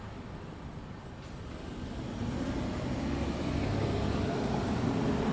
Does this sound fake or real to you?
real